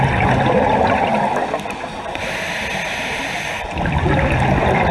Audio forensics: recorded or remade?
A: recorded